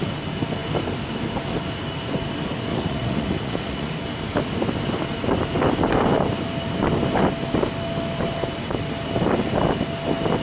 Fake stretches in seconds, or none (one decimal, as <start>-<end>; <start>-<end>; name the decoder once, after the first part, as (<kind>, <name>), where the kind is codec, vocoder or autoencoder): 2.7-4.0 (vocoder, Vocos)